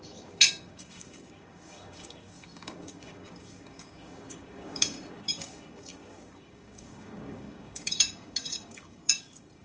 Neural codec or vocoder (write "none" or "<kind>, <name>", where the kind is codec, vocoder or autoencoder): codec, DAC